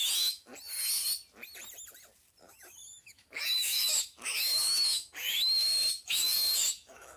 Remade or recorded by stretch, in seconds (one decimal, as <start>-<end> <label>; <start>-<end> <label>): 0.0-0.5 remade; 0.5-2.4 recorded; 2.4-7.2 remade